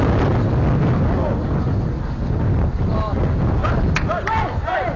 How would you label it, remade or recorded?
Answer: recorded